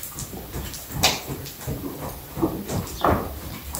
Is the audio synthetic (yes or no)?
yes